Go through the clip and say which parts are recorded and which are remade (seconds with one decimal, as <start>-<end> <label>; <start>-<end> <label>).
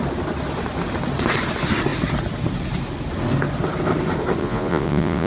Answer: 0.0-4.4 recorded; 4.4-5.3 remade